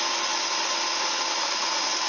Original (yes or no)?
yes